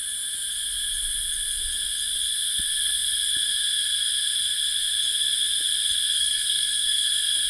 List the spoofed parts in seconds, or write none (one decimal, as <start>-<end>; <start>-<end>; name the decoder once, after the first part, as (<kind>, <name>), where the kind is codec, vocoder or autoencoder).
6.2-7.1 (codec, SNAC)